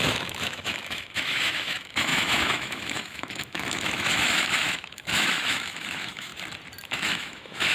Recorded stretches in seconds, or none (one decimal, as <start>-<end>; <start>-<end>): 6.3-6.9